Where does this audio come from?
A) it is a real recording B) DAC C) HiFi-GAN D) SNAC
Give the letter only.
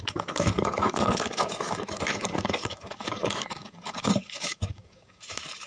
B